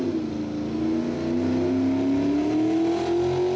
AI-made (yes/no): no